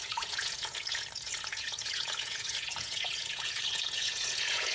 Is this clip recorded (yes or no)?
no